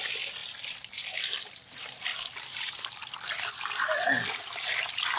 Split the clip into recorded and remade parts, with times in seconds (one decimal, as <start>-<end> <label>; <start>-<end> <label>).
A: 0.0-5.2 recorded